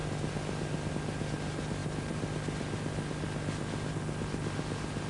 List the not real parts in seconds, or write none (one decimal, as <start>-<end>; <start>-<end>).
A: none